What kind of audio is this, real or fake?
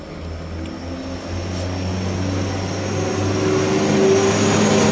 real